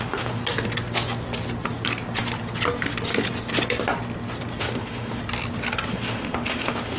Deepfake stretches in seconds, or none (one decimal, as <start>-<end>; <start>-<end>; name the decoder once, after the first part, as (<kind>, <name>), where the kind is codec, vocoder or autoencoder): 0.0-0.4 (autoencoder, DAC-VAE); 4.6-5.2; 5.9-7.0